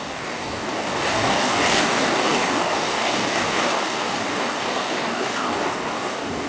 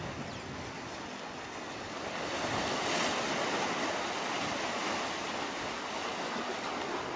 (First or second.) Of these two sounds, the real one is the second